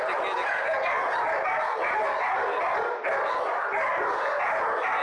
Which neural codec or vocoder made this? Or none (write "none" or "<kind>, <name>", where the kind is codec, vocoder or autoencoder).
none